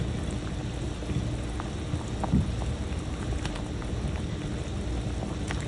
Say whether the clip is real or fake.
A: real